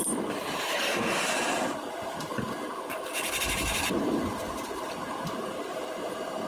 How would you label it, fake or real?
real